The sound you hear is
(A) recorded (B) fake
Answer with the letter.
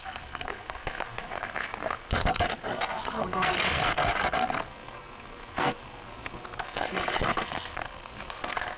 B